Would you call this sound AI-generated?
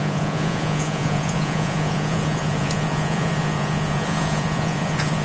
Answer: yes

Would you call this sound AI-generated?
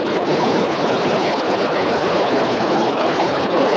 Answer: yes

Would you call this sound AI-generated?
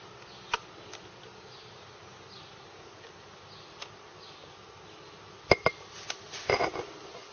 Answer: no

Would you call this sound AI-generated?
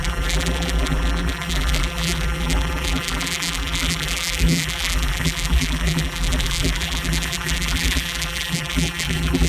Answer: yes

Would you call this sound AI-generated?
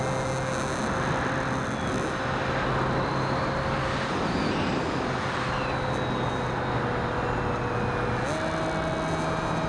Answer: no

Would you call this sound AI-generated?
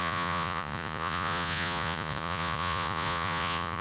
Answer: yes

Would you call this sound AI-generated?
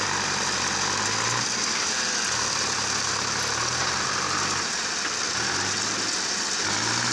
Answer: no